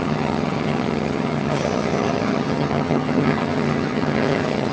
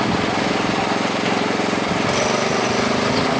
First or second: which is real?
second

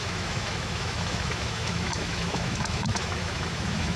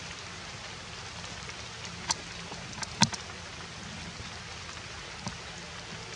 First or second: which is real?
second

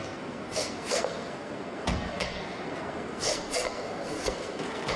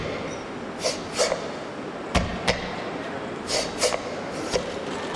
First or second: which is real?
second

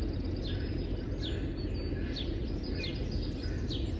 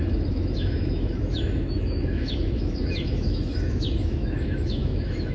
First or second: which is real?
first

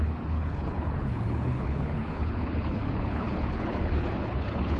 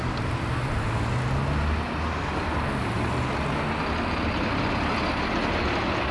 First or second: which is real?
second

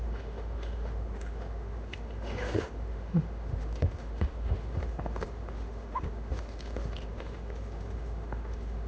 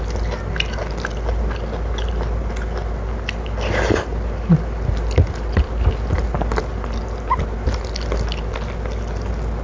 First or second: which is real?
second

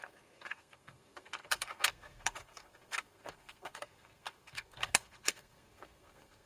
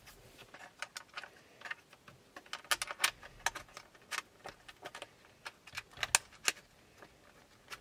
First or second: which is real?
second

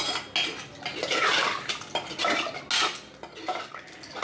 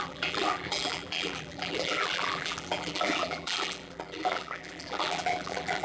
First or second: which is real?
first